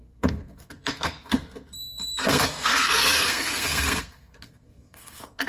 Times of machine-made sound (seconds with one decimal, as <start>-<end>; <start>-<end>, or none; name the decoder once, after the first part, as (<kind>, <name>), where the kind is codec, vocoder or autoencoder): 0.0-5.5 (codec, SNAC)

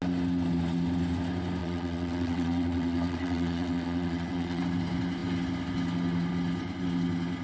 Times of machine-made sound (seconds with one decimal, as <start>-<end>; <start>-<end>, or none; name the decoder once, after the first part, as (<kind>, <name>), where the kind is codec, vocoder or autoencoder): 1.6-4.6 (vocoder, WaveNeXt)

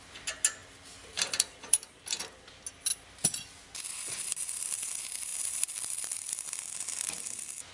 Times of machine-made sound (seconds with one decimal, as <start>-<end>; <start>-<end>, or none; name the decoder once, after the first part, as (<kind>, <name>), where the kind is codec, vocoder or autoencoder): 0.6-2.2 (vocoder, BigVGAN v2); 5.3-6.6

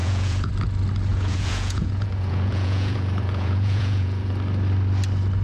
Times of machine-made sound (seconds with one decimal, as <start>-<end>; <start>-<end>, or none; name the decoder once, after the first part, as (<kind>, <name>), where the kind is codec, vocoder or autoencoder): 0.0-0.5 (vocoder, Vocos); 1.1-4.3

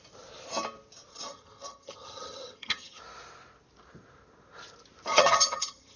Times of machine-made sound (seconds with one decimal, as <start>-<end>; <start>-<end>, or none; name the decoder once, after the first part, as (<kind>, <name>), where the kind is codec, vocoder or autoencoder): 1.1-3.0 (vocoder, HiFi-GAN); 5.1-6.0

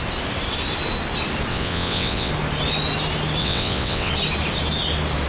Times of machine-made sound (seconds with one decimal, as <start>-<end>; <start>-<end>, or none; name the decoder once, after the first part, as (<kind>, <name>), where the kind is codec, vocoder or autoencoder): 1.5-2.3 (vocoder, WaveNeXt); 3.4-4.1

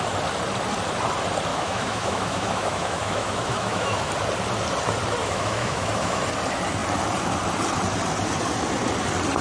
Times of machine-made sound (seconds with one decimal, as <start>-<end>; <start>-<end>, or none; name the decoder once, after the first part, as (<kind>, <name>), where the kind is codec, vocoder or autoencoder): 1.5-4.1 (autoencoder, DAC-VAE); 5.2-6.2

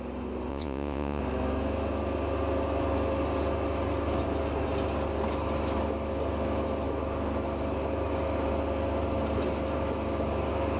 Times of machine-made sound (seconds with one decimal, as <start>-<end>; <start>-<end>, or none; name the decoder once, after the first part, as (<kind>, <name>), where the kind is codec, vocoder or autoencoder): 0.5-1.2 (vocoder, Vocos)